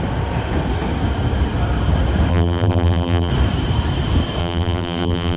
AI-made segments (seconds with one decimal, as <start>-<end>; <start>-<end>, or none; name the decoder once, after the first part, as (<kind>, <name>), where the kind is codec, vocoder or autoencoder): 2.3-3.3 (vocoder, BigVGAN v2); 4.4-5.4